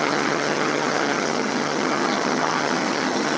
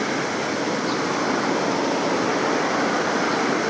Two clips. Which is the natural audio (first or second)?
second